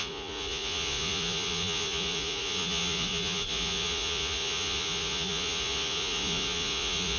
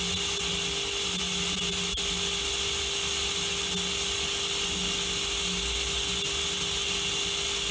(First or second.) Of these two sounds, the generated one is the first